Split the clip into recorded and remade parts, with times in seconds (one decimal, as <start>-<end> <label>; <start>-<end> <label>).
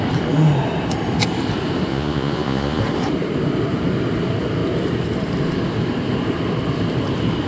0.0-1.9 recorded; 1.9-2.8 remade; 2.8-7.5 recorded